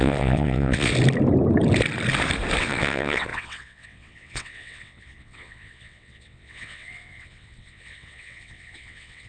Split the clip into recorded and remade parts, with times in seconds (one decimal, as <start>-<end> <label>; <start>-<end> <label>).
0.0-0.9 remade; 0.9-2.6 recorded; 2.6-9.3 remade